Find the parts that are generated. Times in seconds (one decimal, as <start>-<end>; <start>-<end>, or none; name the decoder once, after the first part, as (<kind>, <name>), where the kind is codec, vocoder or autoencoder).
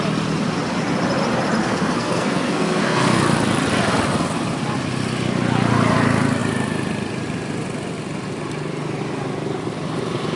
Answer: 1.6-3.2 (codec, SNAC)